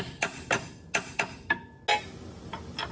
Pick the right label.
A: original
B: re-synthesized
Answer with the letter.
A